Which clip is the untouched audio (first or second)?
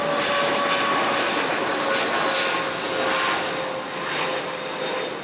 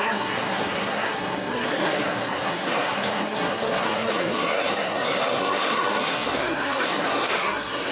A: first